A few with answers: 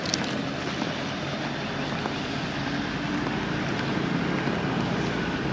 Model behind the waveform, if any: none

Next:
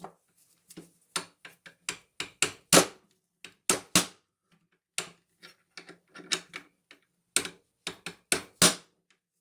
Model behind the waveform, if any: none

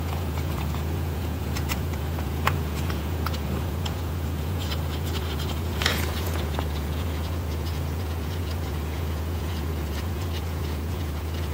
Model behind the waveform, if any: vocoder, Vocos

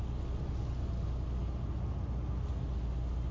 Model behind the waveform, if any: none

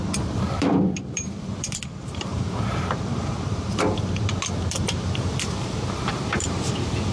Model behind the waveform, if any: vocoder, BigVGAN v2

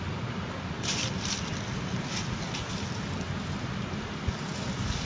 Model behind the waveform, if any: none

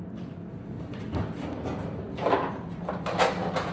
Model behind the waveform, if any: none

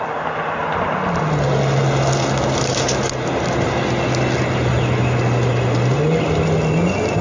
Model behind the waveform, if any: none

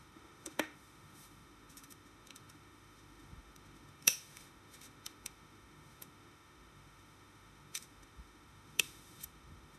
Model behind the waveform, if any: autoencoder, DAC-VAE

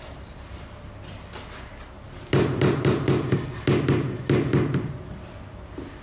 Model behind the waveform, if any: none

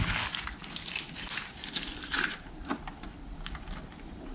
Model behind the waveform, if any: none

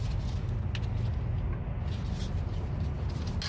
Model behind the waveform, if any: none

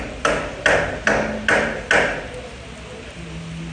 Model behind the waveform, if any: none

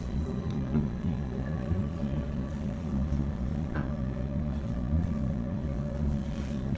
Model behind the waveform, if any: vocoder, Vocos